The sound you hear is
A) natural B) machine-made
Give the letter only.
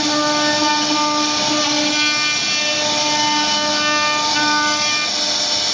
A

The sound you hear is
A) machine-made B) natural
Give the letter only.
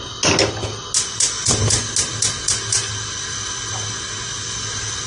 B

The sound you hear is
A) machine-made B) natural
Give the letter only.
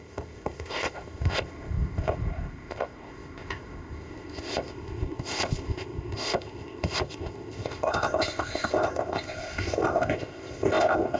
A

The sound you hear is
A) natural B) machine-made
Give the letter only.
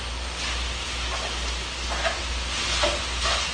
A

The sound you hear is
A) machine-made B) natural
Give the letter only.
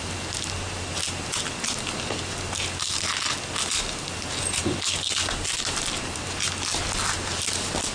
B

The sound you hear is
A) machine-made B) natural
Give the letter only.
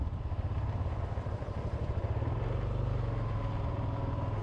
B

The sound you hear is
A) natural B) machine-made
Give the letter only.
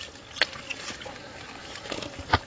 A